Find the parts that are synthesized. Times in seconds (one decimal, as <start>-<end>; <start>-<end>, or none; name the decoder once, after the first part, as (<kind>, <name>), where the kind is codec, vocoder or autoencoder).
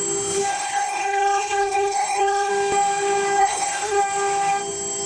0.5-2.5 (codec, SNAC); 3.4-4.0